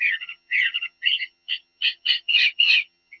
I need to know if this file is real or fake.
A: fake